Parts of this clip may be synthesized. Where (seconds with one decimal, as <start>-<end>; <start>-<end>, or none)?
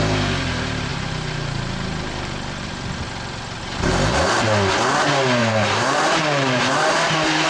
5.4-7.5